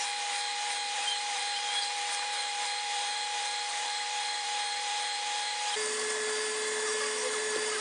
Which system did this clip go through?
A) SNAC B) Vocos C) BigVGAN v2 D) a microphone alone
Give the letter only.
C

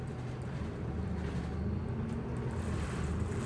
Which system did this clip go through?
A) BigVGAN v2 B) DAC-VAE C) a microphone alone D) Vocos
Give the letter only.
C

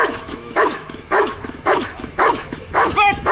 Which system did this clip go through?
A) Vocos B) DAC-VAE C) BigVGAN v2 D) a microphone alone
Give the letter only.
B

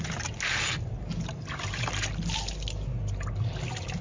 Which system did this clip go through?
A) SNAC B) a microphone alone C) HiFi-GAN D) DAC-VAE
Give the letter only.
B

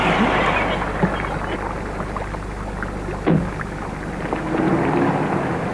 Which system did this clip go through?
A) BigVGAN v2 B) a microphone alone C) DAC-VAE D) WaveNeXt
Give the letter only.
B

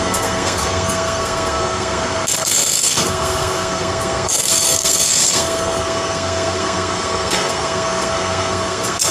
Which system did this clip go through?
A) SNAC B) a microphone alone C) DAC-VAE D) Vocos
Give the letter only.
A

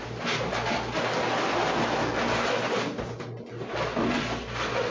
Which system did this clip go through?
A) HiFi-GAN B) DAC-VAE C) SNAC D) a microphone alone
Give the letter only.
D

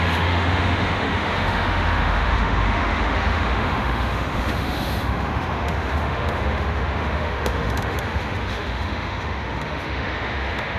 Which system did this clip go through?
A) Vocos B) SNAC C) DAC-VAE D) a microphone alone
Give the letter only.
C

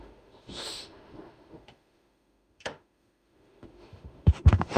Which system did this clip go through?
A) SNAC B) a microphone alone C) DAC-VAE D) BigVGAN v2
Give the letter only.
C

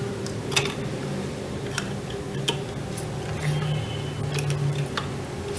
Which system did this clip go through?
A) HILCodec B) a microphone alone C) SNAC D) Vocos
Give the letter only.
B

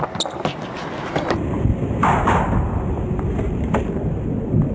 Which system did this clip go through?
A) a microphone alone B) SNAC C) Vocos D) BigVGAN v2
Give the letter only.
A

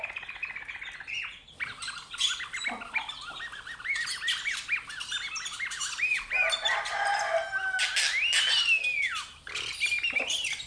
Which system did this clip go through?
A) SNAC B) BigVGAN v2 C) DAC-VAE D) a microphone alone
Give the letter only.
D